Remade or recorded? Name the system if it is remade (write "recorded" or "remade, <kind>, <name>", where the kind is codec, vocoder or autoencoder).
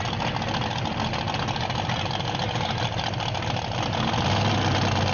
recorded